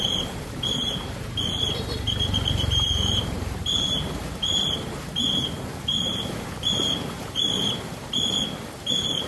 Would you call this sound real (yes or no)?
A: no